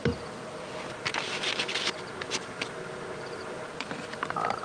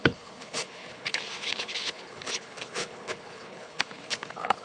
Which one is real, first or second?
first